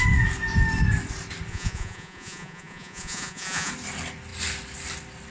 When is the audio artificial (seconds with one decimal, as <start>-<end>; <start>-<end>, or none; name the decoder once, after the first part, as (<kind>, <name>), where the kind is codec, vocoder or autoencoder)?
1.5-3.7 (vocoder, Vocos)